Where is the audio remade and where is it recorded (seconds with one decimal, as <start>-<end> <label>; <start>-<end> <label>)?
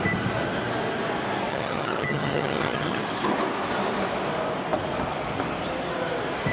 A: 0.0-1.5 recorded; 1.5-3.0 remade; 3.0-6.5 recorded